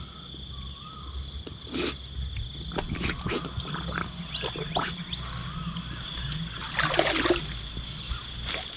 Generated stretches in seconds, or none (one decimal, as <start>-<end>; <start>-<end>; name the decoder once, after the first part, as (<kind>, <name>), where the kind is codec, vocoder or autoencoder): none